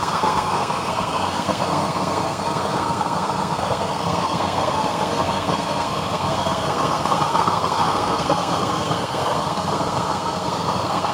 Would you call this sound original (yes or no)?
no